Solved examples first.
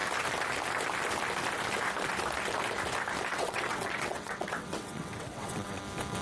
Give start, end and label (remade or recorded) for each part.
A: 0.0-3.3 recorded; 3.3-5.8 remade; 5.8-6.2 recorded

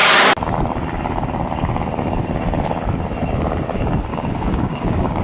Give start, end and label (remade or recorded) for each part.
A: 0.0-4.1 recorded; 4.1-5.2 remade